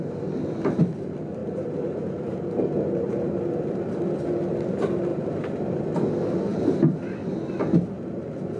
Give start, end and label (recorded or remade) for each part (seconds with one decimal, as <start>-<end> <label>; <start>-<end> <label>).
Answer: 0.0-1.4 recorded; 1.4-3.4 remade; 3.4-5.1 recorded; 5.1-5.8 remade; 5.8-8.6 recorded